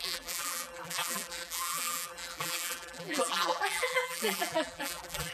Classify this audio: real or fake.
fake